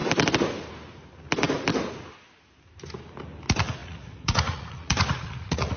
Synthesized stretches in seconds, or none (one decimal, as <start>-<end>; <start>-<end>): 3.8-5.8